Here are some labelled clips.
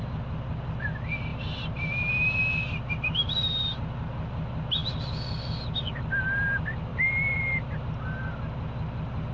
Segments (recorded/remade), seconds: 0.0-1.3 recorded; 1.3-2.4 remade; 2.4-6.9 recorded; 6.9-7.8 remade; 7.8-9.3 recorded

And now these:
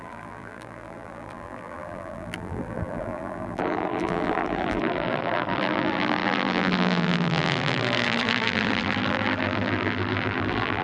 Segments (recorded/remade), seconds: 0.0-10.8 remade